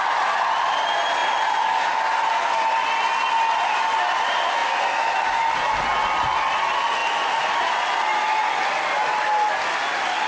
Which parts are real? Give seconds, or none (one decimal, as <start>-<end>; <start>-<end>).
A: 0.0-10.3